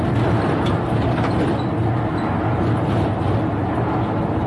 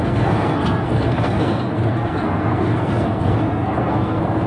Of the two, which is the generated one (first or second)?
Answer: second